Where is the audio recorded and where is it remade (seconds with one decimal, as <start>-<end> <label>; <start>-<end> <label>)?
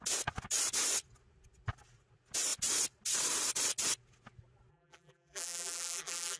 0.0-4.7 recorded; 4.7-6.4 remade